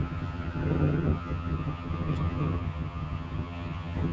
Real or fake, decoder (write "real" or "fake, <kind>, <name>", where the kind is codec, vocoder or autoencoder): fake, vocoder, HiFi-GAN